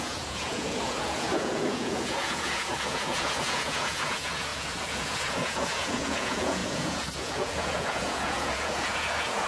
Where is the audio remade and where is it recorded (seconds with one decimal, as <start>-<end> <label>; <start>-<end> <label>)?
0.0-9.5 remade